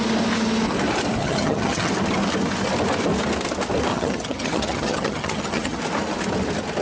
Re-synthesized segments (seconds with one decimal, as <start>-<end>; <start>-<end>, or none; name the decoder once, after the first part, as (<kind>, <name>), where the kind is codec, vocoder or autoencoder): 1.2-1.9 (vocoder, HiFi-GAN); 3.9-5.8